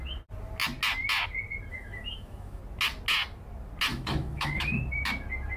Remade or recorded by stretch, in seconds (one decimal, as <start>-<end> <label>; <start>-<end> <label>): 0.0-1.7 recorded; 1.7-2.6 remade; 2.6-3.9 recorded; 3.9-4.8 remade; 4.8-5.6 recorded